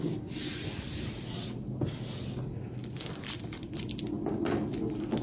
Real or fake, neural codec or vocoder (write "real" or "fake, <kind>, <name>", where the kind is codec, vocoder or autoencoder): real